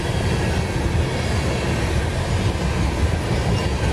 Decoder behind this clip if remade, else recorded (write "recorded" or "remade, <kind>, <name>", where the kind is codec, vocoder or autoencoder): recorded